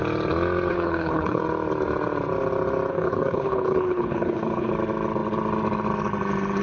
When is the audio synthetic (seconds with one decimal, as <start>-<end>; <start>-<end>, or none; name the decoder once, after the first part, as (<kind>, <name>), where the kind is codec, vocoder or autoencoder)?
0.7-1.4 (codec, HILCodec); 2.9-4.7